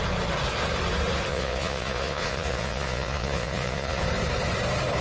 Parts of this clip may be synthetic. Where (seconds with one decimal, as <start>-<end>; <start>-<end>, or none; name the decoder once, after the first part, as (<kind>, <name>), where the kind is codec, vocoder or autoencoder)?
1.3-4.0 (vocoder, Vocos)